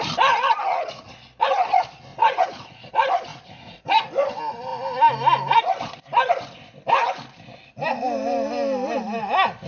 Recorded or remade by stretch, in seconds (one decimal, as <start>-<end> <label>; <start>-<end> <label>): 0.0-2.1 recorded; 2.1-2.9 remade; 2.9-3.3 recorded; 3.3-4.0 remade; 4.0-9.7 recorded